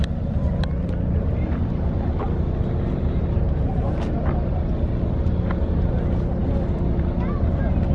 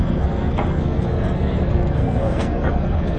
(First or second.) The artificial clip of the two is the second